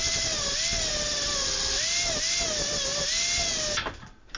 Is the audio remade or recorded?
recorded